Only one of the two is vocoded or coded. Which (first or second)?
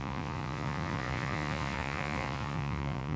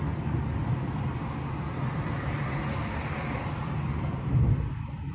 first